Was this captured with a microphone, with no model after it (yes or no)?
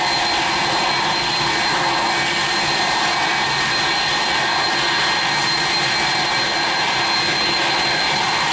yes